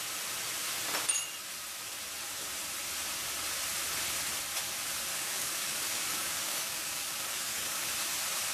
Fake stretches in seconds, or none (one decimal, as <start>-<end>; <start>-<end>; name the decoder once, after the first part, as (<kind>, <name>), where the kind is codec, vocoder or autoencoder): 5.1-7.9 (codec, DAC)